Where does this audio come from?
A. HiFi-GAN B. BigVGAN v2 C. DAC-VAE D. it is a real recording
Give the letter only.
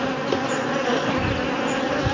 D